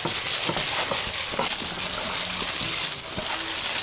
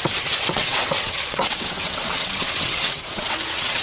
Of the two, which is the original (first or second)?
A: first